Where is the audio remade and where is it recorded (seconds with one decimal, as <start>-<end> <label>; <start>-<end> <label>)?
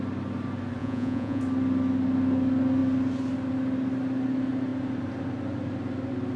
0.0-0.8 recorded; 0.8-1.4 remade; 1.4-6.4 recorded